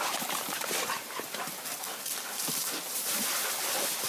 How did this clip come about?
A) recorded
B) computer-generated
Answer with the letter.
B